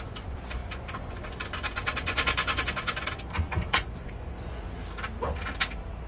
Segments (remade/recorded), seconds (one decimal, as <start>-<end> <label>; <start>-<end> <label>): 0.0-4.8 remade; 4.8-6.1 recorded